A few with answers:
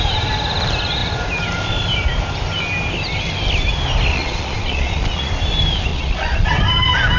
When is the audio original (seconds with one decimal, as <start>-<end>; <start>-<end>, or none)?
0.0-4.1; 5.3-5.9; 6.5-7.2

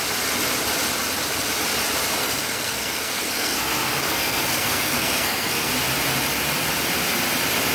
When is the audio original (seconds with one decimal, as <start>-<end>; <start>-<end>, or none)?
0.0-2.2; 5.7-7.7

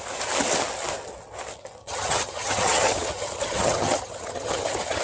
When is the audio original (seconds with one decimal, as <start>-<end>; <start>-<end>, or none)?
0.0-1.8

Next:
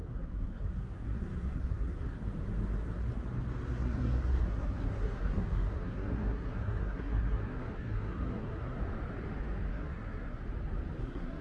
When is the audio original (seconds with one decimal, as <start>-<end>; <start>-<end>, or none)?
2.2-3.7; 8.8-9.7; 10.4-11.0